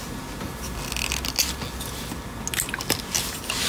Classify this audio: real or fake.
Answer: real